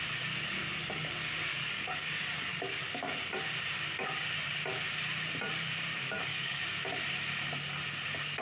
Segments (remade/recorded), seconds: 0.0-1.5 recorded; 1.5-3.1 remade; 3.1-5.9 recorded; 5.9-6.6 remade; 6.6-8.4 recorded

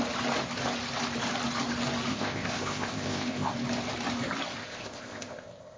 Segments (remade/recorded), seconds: 0.0-2.1 recorded; 2.1-3.5 remade; 3.5-4.6 recorded; 4.6-5.8 remade

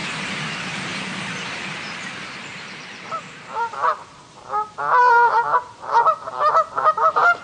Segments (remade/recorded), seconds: 0.0-4.2 remade; 4.2-5.0 recorded; 5.0-7.4 remade

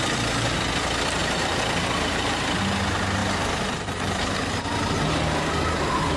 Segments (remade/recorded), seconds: 0.0-1.2 recorded; 1.2-2.6 remade; 2.6-3.2 recorded; 3.2-4.3 remade; 4.3-6.2 recorded

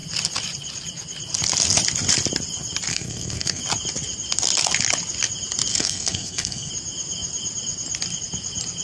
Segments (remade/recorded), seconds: 0.0-2.9 recorded; 2.9-3.6 remade; 3.6-5.7 recorded; 5.7-6.7 remade; 6.7-8.8 recorded

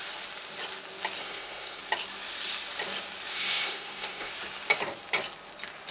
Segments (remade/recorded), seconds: 0.0-1.2 recorded; 1.2-1.8 remade; 1.8-3.3 recorded; 3.3-4.3 remade; 4.3-5.9 recorded

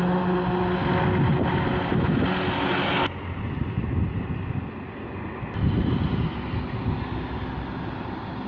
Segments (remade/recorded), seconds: 0.0-8.5 recorded

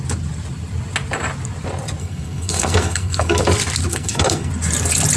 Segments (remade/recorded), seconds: 0.0-2.0 recorded; 2.0-3.4 remade; 3.4-3.9 recorded; 3.9-4.5 remade; 4.5-5.2 recorded